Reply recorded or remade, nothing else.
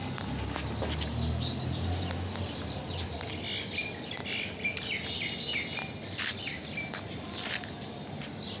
recorded